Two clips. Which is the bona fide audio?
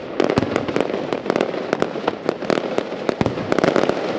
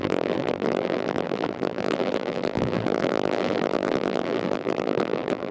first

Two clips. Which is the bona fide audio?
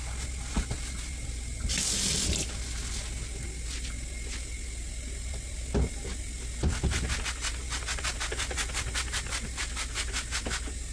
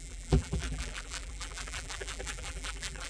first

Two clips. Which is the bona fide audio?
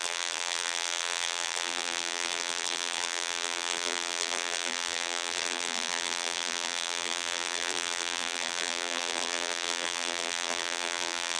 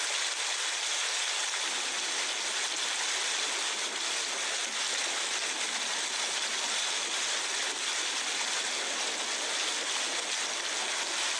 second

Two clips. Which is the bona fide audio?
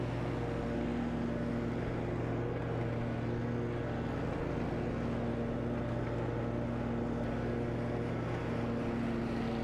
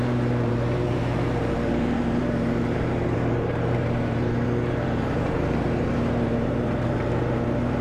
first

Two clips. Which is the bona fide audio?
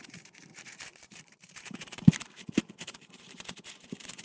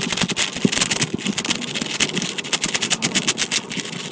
second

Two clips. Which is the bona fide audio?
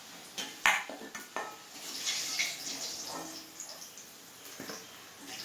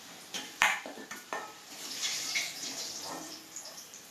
first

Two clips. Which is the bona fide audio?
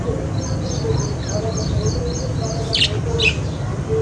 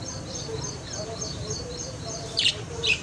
first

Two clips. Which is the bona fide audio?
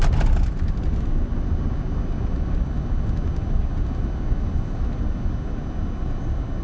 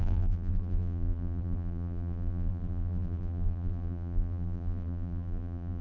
first